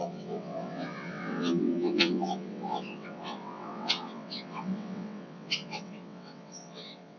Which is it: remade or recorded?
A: remade